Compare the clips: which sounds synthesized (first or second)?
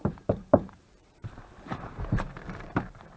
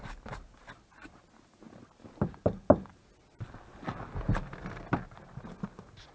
first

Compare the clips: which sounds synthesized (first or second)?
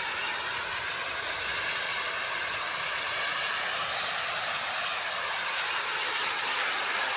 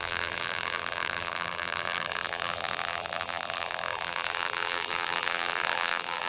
second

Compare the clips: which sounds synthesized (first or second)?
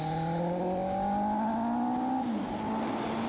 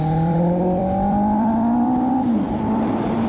second